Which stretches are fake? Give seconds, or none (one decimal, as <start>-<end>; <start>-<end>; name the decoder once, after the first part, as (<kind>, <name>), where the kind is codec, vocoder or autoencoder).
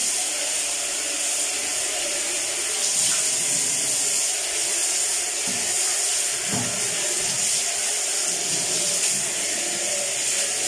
none